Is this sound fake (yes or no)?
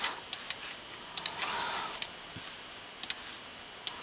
no